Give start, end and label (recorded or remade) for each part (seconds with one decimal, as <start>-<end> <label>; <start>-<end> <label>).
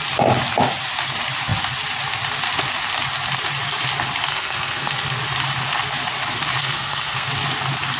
0.0-4.3 recorded; 4.3-5.2 remade; 5.2-6.6 recorded; 6.6-7.3 remade; 7.3-8.0 recorded